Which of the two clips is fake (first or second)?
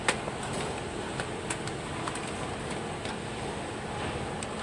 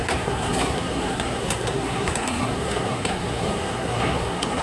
second